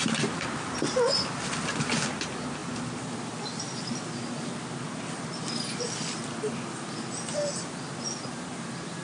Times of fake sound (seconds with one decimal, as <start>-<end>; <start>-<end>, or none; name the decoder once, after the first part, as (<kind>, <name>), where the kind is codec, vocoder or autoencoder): none